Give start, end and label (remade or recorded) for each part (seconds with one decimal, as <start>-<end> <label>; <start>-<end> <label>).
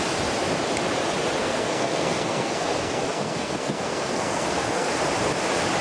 0.0-1.4 recorded; 1.4-4.9 remade; 4.9-5.8 recorded